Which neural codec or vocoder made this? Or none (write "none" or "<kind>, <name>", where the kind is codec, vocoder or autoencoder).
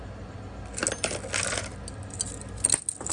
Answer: none